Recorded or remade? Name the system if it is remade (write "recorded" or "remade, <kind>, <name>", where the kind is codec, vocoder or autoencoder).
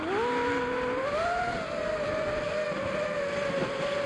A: recorded